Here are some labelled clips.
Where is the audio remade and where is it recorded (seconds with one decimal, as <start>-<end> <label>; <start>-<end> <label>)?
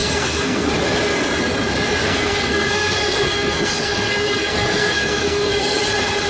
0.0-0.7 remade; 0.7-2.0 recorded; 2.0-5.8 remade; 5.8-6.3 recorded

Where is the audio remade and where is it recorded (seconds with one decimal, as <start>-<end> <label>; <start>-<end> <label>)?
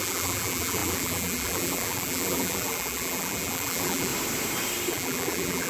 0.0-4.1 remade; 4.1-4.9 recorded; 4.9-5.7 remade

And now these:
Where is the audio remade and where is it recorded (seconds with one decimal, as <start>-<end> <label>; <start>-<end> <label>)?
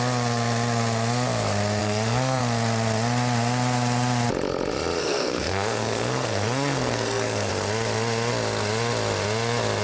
0.0-1.8 recorded; 1.8-2.4 remade; 2.4-5.0 recorded; 5.0-7.5 remade; 7.5-9.8 recorded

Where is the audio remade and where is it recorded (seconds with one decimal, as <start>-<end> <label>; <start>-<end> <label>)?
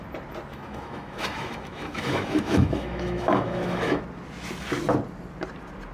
0.0-0.5 recorded; 0.5-4.0 remade; 4.0-5.9 recorded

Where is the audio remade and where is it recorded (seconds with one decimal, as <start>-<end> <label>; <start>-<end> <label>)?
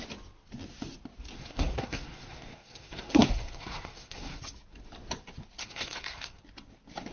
0.0-1.4 recorded; 1.4-4.4 remade; 4.4-5.6 recorded; 5.6-6.4 remade; 6.4-7.1 recorded